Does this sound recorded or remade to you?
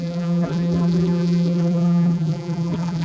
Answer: remade